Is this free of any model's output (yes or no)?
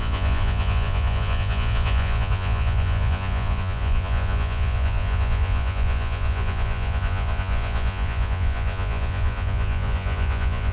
no